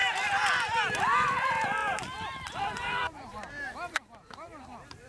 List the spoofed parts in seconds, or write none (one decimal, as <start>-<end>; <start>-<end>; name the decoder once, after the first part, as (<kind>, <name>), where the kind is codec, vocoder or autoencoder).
1.8-5.1 (vocoder, BigVGAN v2)